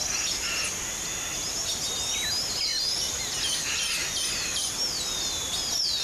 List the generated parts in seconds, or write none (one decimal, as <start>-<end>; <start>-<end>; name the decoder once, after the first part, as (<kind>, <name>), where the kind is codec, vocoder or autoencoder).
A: none